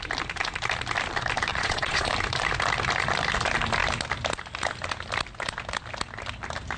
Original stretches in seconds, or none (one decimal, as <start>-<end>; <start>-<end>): 0.0-1.5; 2.1-6.8